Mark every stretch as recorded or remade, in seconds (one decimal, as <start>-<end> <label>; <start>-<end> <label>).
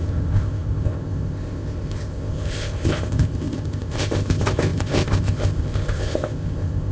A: 0.0-6.9 remade